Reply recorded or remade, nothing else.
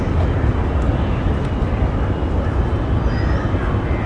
recorded